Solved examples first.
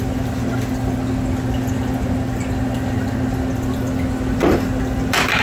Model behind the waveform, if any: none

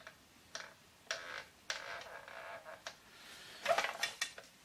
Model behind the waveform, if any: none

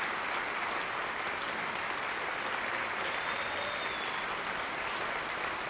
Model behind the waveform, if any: none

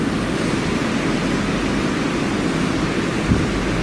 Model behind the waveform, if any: none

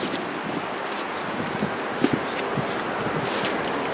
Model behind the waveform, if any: none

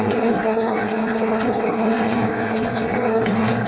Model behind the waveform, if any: codec, SNAC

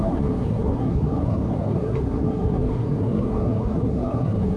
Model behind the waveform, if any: codec, SNAC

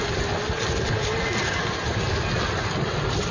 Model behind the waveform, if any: none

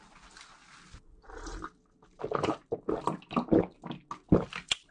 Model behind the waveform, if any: none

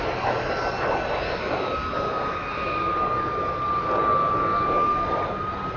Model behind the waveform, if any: none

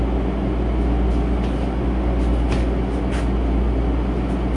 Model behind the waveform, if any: none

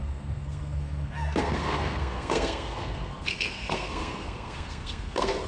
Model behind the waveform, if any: codec, SNAC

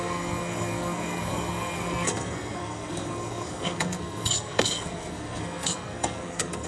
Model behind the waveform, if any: codec, SNAC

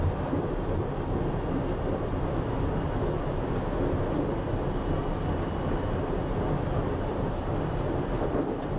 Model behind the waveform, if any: none